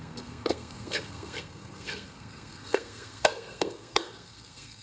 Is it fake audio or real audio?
fake